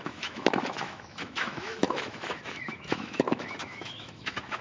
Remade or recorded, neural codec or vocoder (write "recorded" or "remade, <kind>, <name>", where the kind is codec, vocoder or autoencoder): remade, autoencoder, DAC-VAE